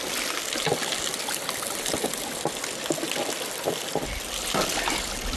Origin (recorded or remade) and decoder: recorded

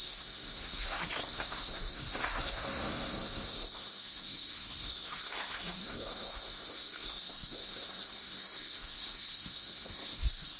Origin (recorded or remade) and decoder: remade, codec, SNAC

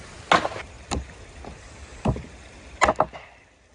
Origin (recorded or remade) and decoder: recorded